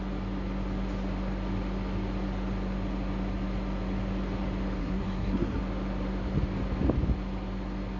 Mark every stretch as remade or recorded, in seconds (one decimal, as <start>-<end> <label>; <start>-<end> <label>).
0.0-4.8 recorded; 4.8-5.6 remade; 5.6-8.0 recorded